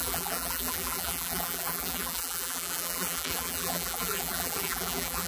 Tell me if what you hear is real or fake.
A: fake